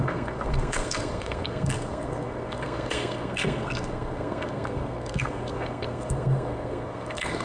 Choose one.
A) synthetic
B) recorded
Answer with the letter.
A